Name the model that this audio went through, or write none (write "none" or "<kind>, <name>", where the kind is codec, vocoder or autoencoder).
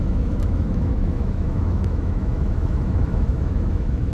autoencoder, DAC-VAE